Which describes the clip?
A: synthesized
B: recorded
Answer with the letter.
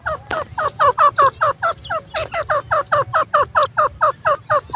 B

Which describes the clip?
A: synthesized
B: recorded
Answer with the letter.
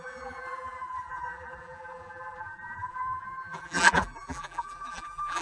A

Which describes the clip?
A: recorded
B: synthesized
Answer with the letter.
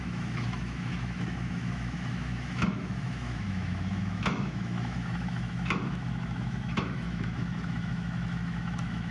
B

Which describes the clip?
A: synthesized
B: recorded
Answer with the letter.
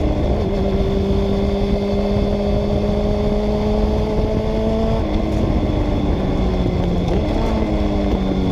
B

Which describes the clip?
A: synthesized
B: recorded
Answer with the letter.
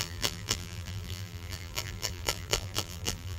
A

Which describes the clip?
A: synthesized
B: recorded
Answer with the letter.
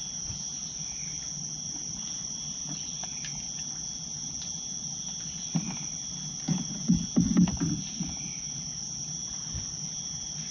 B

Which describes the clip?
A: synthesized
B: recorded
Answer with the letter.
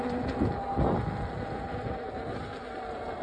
B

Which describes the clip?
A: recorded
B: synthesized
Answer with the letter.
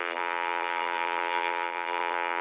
B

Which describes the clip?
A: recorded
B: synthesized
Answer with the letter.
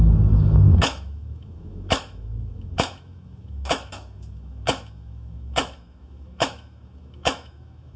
B